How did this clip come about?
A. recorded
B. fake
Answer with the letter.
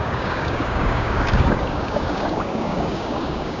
B